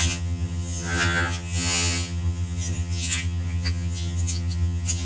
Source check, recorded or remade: remade